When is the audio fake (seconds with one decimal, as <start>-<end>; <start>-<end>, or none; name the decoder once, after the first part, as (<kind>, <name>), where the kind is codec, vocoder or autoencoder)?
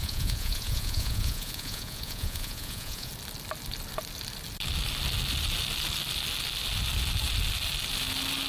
0.0-3.1 (vocoder, Vocos)